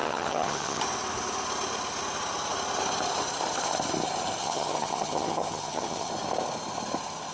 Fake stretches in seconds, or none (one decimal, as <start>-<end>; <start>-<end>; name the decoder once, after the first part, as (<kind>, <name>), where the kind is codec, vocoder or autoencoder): 0.0-0.8 (vocoder, HiFi-GAN); 4.4-6.1